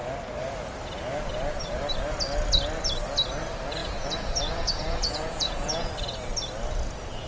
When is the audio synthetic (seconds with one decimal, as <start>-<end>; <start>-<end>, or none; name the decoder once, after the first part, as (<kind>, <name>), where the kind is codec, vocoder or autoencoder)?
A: 3.8-5.9 (vocoder, Vocos)